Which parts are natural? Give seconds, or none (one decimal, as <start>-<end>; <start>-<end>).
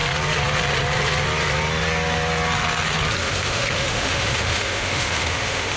0.0-3.2